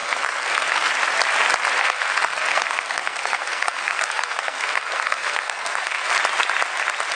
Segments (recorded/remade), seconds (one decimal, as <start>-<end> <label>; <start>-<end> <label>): 0.0-0.9 remade; 0.9-1.8 recorded; 1.8-6.1 remade; 6.1-7.2 recorded

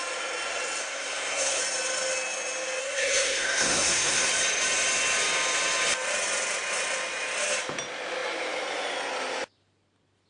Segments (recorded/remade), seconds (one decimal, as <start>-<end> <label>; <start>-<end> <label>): 0.0-0.8 recorded; 0.8-1.6 remade; 1.6-2.8 recorded; 2.8-4.3 remade; 4.3-10.3 recorded

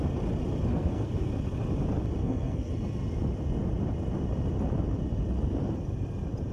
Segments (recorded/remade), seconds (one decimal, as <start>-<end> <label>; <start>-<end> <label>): 0.0-0.7 recorded; 0.7-1.3 remade; 1.3-2.2 recorded; 2.2-2.7 remade; 2.7-6.5 recorded

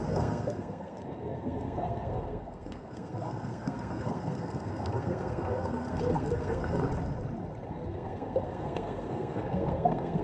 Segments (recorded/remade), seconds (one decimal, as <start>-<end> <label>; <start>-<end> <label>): 0.0-6.8 remade; 6.8-7.7 recorded; 7.7-10.2 remade